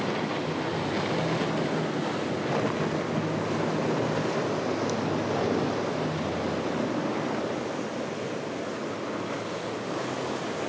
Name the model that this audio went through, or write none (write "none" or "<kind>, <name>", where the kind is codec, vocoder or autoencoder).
none